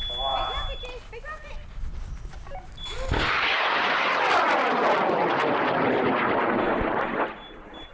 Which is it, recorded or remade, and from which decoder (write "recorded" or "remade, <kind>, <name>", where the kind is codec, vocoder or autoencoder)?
recorded